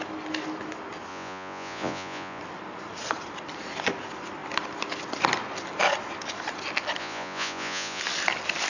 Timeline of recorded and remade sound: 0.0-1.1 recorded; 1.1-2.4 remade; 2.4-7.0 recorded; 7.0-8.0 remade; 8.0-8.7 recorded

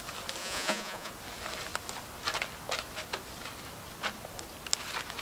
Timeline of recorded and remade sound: 0.0-0.4 recorded; 0.4-1.1 remade; 1.1-5.2 recorded

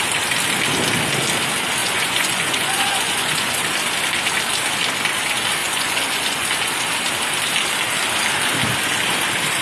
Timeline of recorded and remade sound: 0.0-1.8 recorded; 1.8-3.6 remade; 3.6-5.6 recorded; 5.6-6.7 remade; 6.7-9.6 recorded

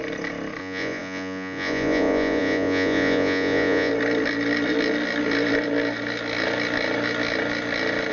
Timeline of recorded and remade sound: 0.0-0.6 recorded; 0.6-3.9 remade; 3.9-8.1 recorded

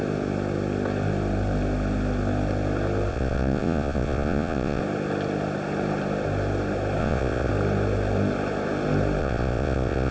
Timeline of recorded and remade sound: 0.0-3.1 recorded; 3.1-4.8 remade; 4.8-7.0 recorded; 7.0-7.5 remade; 7.5-9.2 recorded; 9.2-10.1 remade